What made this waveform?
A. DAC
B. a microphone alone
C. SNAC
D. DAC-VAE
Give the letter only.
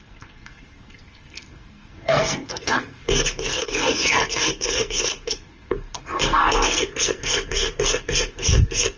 C